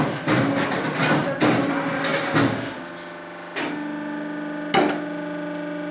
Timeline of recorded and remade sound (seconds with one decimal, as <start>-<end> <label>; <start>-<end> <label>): 0.0-5.9 recorded